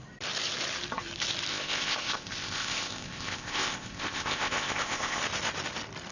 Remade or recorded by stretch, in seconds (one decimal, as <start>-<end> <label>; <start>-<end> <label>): 0.0-1.5 recorded; 1.5-5.2 remade; 5.2-6.1 recorded